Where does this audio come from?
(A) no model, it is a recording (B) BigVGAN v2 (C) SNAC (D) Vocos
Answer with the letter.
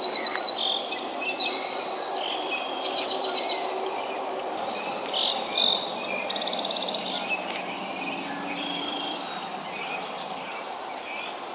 B